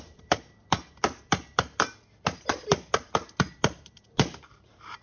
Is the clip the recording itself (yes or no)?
no